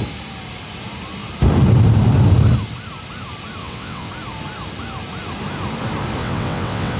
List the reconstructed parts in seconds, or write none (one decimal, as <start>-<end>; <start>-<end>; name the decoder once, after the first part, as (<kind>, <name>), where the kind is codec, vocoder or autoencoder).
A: 3.6-4.1 (vocoder, WaveNeXt); 6.2-7.0

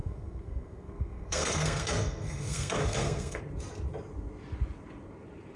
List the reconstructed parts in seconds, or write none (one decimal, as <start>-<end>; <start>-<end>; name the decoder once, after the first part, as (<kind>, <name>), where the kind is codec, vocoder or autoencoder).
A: 0.0-3.4 (codec, SNAC)

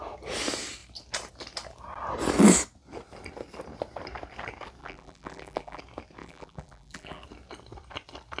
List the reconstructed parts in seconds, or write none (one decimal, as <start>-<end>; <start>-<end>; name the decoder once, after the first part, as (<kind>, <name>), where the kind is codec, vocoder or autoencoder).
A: 4.8-5.8 (vocoder, BigVGAN v2); 6.2-7.2

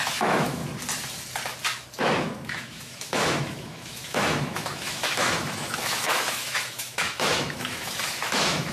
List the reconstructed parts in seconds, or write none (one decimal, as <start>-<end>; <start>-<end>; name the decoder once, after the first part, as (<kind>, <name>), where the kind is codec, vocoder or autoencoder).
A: 0.0-0.6 (autoencoder, DAC-VAE); 2.0-8.7